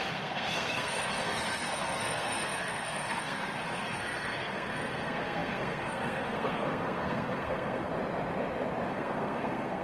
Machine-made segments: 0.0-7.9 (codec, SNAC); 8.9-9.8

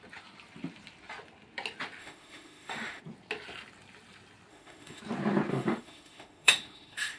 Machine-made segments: 2.0-3.0 (autoencoder, DAC-VAE); 4.5-5.0; 5.5-7.2

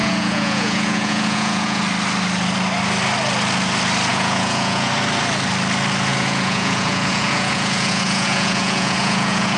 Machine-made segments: 0.0-1.8 (vocoder, Vocos); 4.1-4.9; 6.1-9.6

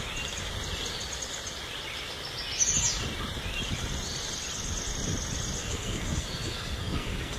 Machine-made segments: 5.6-7.4 (codec, SNAC)

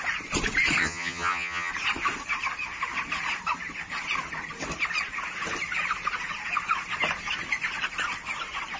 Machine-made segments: 0.8-1.7 (vocoder, HiFi-GAN)

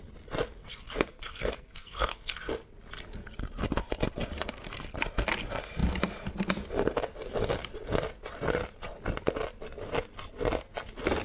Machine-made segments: 0.6-2.5 (codec, SNAC)

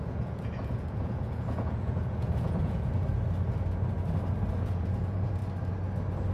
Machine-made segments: 0.0-2.9 (vocoder, Vocos); 4.6-5.4

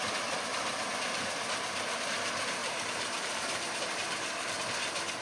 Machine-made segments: 0.5-1.6 (vocoder, BigVGAN v2); 2.6-4.6